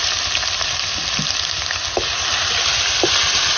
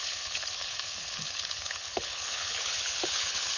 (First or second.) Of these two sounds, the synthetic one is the second